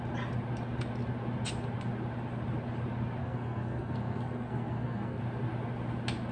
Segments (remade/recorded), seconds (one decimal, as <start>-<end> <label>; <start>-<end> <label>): 0.0-3.2 recorded; 3.2-5.2 remade; 5.2-6.3 recorded